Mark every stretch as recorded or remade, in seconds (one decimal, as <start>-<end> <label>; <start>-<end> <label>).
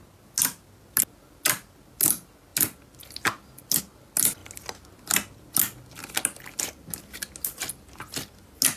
0.0-8.8 recorded